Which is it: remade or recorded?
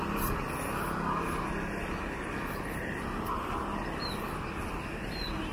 recorded